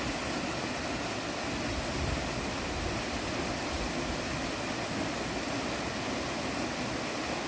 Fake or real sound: real